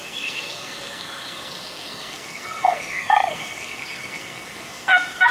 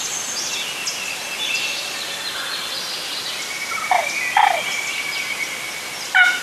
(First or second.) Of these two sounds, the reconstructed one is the first